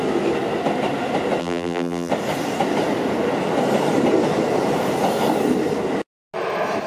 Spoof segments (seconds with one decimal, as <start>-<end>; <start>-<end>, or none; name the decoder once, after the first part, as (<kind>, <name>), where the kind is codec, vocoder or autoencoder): 1.4-2.1 (vocoder, BigVGAN v2)